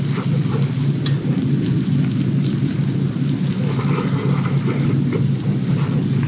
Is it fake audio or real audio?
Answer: real